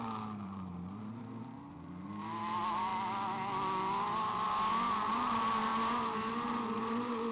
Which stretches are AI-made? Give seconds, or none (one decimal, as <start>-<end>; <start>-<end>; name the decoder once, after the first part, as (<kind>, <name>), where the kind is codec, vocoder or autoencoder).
0.0-2.9 (vocoder, BigVGAN v2); 4.7-5.7; 6.3-7.3